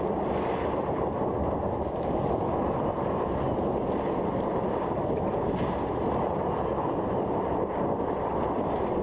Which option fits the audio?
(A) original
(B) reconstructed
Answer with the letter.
A